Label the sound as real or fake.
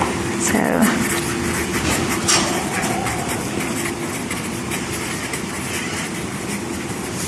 real